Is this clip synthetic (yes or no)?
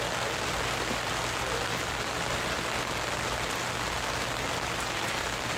no